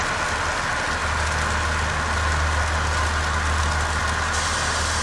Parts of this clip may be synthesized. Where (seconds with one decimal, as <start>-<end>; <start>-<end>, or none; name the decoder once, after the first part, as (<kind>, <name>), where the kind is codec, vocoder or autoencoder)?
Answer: none